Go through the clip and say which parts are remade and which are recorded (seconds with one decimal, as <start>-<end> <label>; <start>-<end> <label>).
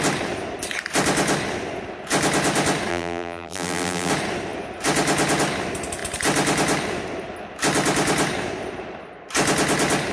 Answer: 0.0-2.9 recorded; 2.9-4.1 remade; 4.1-10.1 recorded